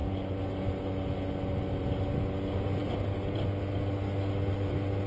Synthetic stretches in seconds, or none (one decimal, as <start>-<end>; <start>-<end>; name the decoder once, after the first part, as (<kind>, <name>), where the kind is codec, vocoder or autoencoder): none